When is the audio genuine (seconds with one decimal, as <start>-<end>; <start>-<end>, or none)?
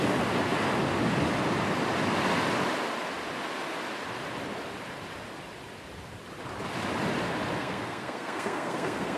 0.0-7.6